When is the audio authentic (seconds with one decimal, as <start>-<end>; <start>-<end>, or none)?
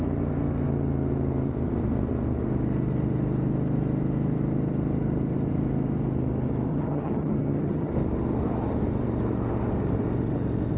0.0-6.7; 7.9-10.8